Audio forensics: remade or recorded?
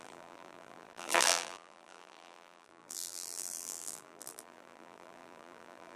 remade